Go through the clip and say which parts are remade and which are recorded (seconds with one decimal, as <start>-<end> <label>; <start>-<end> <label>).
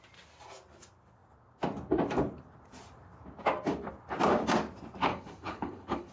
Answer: 0.0-5.1 recorded; 5.1-6.1 remade